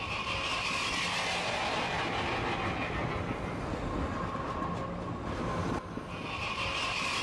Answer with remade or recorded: recorded